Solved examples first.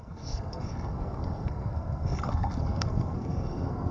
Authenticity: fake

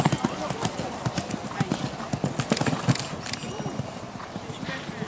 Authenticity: real